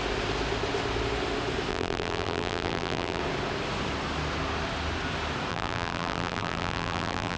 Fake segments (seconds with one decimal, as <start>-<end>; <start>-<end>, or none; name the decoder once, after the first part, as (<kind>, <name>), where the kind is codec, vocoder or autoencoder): 1.7-3.2 (vocoder, BigVGAN v2); 5.5-7.4